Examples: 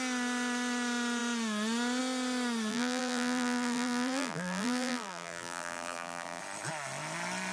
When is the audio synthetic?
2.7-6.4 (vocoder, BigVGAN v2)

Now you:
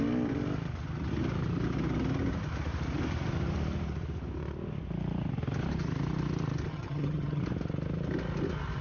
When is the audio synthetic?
6.7-7.4 (vocoder, HiFi-GAN)

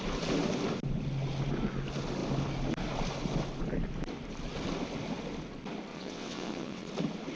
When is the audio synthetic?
5.9-6.9 (vocoder, WaveNeXt)